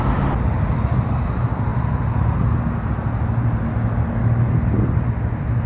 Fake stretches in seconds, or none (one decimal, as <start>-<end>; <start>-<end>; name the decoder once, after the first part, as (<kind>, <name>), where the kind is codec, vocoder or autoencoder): none